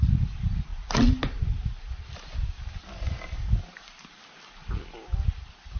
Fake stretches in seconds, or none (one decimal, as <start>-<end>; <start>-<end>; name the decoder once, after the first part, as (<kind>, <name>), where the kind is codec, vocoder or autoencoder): none